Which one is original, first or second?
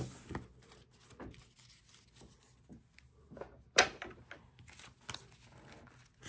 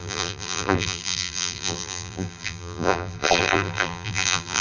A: first